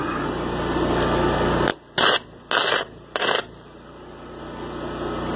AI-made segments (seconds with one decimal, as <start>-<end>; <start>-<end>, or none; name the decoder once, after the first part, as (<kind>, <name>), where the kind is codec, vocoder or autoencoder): none